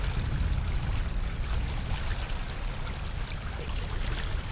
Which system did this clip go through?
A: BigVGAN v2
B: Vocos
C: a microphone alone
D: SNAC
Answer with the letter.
C